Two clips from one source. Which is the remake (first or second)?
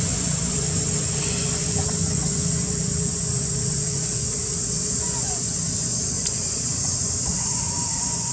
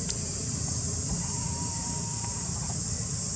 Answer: first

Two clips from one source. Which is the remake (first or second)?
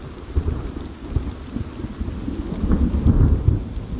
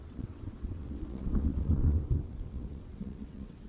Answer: second